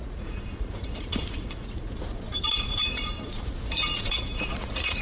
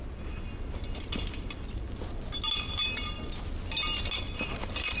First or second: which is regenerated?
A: first